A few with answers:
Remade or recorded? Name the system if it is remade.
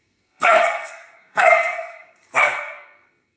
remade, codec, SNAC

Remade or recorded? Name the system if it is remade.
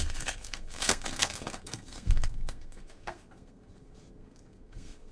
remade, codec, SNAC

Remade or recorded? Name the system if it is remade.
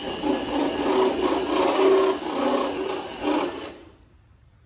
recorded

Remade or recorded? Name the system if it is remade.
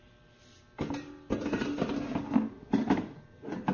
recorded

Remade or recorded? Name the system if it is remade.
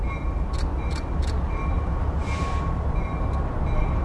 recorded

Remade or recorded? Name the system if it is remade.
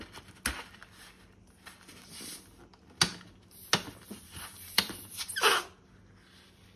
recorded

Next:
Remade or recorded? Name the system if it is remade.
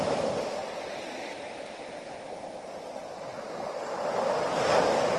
recorded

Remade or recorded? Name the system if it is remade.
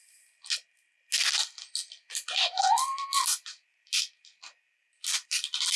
recorded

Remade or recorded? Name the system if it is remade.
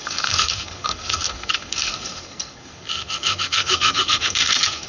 remade, codec, SNAC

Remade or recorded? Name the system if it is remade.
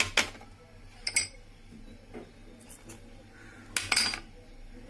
recorded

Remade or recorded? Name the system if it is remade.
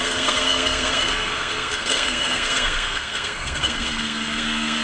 remade, codec, SNAC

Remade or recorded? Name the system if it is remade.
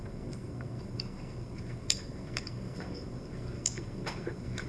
remade, codec, SNAC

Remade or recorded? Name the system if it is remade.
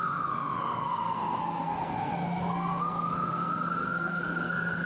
remade, codec, SNAC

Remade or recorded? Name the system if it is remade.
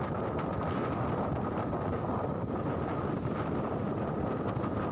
recorded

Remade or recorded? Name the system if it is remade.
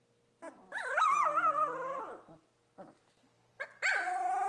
recorded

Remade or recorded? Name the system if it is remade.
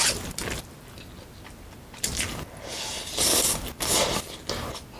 recorded